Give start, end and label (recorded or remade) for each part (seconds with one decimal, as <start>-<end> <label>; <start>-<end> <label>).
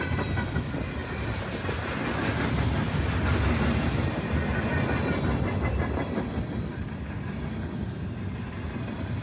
0.0-9.2 recorded